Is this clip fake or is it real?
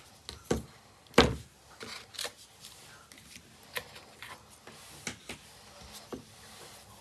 real